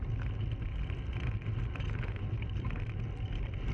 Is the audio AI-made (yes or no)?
no